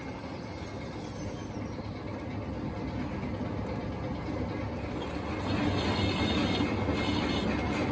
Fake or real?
real